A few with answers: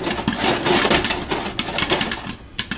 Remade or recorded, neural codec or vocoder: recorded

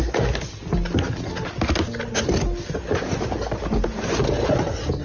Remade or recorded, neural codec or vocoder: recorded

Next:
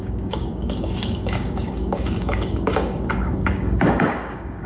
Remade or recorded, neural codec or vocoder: remade, codec, DAC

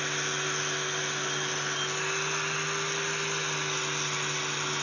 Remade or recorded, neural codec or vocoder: recorded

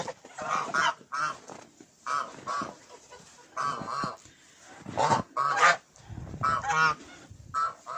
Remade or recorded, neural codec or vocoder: recorded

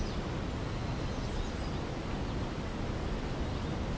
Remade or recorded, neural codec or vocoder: recorded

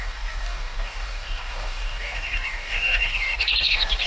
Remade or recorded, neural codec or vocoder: remade, codec, DAC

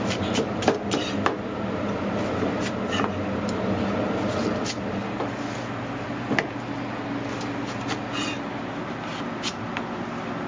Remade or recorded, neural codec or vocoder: recorded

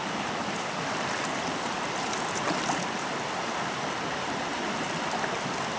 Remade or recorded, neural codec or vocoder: recorded